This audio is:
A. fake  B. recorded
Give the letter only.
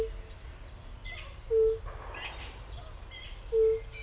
B